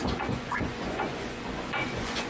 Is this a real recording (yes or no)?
no